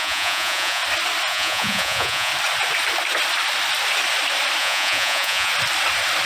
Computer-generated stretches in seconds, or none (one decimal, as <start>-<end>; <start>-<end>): 0.0-0.8; 1.3-2.3; 4.6-5.5